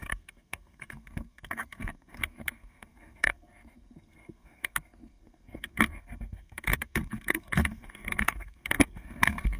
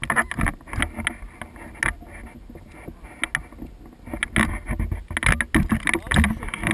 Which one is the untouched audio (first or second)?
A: second